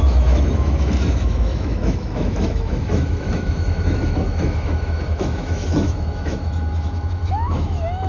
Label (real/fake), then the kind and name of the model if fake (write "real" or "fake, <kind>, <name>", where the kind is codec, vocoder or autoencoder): fake, autoencoder, DAC-VAE